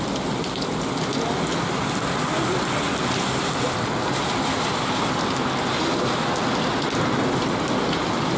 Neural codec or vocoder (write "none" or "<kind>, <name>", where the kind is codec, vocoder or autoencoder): none